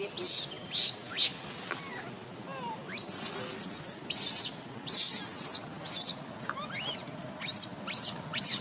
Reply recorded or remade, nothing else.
recorded